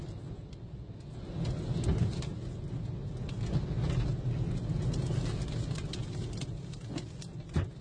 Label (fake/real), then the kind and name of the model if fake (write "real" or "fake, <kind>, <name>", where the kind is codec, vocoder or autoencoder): real